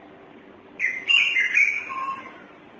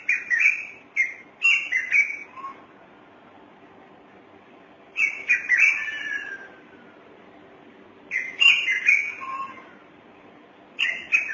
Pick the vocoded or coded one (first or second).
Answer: first